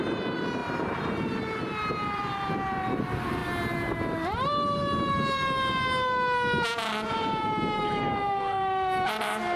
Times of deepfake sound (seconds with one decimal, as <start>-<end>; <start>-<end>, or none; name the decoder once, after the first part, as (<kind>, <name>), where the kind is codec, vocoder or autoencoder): 0.0-3.4 (vocoder, BigVGAN v2); 7.1-9.6